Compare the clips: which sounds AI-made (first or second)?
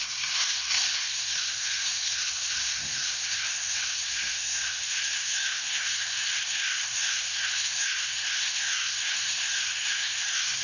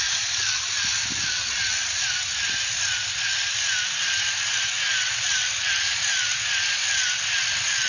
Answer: first